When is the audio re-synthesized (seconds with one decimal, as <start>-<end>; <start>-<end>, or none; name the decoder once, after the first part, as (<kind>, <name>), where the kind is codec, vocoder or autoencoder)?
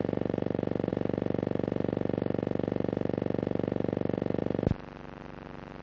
0.0-5.8 (vocoder, BigVGAN v2)